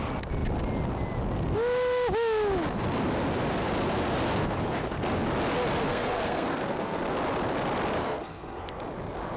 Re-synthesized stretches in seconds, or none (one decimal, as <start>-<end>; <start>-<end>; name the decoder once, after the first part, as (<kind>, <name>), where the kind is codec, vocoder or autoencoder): 5.9-7.0 (codec, SNAC); 8.0-8.8